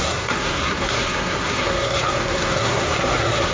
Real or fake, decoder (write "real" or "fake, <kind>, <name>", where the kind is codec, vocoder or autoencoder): fake, codec, SNAC